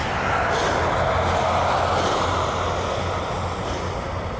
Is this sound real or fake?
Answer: real